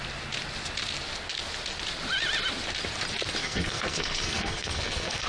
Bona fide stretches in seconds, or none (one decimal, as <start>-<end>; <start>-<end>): 0.0-3.4